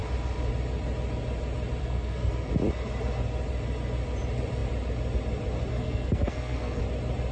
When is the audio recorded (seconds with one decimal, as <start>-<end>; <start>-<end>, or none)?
0.0-1.8; 2.5-5.7; 6.8-7.3